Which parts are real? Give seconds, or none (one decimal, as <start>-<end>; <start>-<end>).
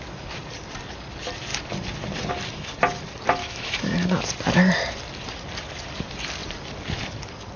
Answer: 0.0-3.4; 4.2-7.6